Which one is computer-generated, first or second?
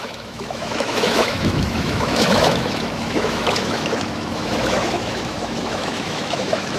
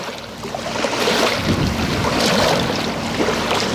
first